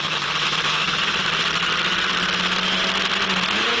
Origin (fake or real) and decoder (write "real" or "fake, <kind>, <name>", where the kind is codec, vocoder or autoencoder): real